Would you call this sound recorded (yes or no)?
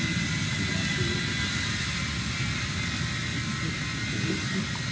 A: yes